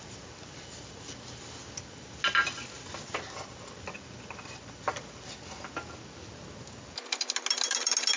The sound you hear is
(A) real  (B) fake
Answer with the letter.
A